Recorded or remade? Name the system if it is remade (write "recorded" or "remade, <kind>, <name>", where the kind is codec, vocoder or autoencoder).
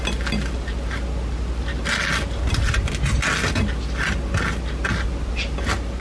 recorded